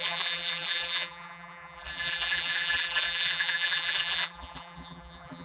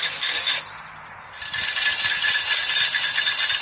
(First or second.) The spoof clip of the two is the first